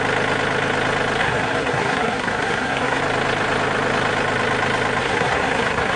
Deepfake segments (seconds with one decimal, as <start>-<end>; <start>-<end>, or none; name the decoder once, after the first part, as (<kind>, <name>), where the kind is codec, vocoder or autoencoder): 1.2-3.0 (codec, SNAC); 5.0-6.0